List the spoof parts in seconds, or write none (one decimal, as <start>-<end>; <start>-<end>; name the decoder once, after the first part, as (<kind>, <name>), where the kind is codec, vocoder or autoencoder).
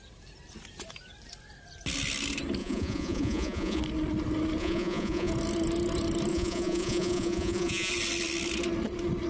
2.6-3.8 (vocoder, Vocos); 4.6-5.3; 6.3-7.9